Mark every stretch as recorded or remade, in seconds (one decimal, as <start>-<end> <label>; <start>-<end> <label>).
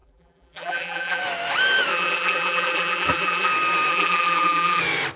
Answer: 0.0-1.2 remade; 1.2-1.9 recorded; 1.9-3.5 remade; 3.5-3.9 recorded; 3.9-4.8 remade; 4.8-5.2 recorded